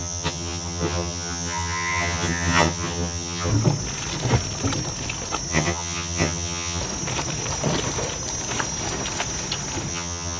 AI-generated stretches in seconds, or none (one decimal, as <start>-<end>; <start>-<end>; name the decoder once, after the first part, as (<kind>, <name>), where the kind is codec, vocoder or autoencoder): 0.0-3.5 (vocoder, HiFi-GAN); 5.5-6.8; 9.9-10.4